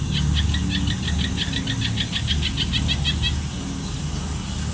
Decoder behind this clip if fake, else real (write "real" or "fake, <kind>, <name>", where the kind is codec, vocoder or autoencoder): real